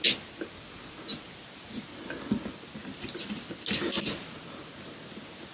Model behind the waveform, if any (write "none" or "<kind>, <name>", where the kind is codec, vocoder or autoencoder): none